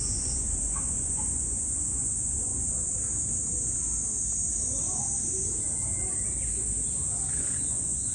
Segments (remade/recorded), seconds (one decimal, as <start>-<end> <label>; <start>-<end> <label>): 0.0-2.5 remade; 2.5-7.3 recorded; 7.3-8.1 remade